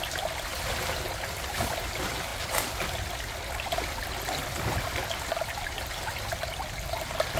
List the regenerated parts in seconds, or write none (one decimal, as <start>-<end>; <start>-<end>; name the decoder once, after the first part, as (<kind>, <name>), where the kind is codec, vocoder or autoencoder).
none